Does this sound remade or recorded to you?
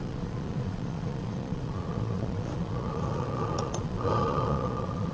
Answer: remade